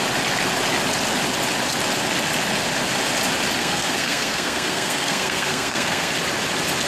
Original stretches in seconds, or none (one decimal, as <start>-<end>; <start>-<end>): 0.0-3.6; 6.1-6.9